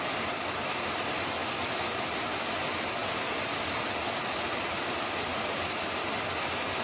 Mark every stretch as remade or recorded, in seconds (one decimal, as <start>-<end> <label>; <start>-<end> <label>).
0.0-3.0 recorded; 3.0-4.2 remade; 4.2-6.8 recorded